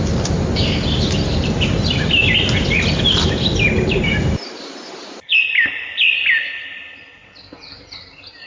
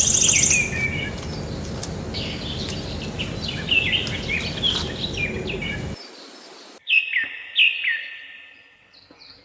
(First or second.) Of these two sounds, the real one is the second